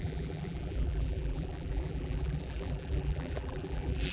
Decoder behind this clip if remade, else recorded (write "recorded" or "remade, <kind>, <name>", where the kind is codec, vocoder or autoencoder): remade, vocoder, BigVGAN v2